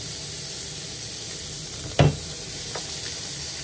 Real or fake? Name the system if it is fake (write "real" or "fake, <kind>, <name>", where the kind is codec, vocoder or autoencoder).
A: real